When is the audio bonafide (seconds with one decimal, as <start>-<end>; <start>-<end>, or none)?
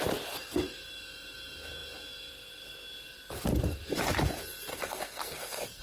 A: 0.0-4.7